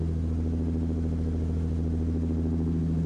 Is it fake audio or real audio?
real